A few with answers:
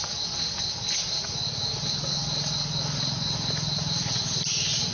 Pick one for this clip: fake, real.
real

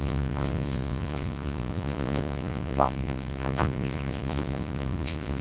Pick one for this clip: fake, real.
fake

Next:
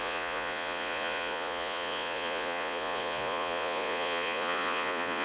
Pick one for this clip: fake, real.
fake